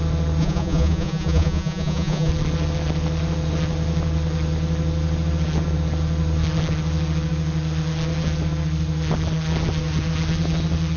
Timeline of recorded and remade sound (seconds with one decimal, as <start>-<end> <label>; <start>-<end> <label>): 0.0-0.4 recorded; 0.4-2.3 remade; 2.3-11.0 recorded